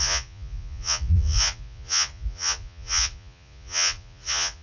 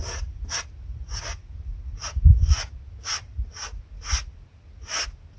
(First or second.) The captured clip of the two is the second